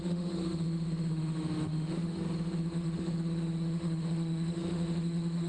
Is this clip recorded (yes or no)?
no